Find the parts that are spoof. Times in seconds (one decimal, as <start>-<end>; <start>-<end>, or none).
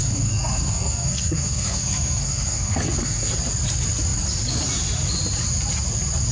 0.0-3.3